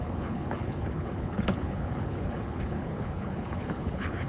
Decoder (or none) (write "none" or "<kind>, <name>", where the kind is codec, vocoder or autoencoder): codec, HILCodec